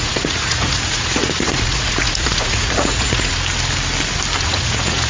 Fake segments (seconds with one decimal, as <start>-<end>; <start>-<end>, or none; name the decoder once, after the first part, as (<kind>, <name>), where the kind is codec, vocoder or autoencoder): 0.0-3.3 (vocoder, Vocos); 4.4-5.1